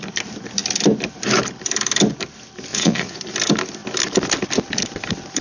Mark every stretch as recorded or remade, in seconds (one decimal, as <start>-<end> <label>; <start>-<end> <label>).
0.0-2.7 recorded; 2.7-3.2 remade; 3.2-5.4 recorded